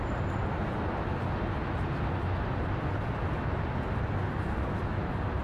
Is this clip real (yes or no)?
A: yes